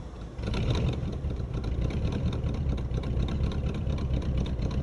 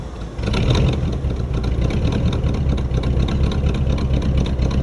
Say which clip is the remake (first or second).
first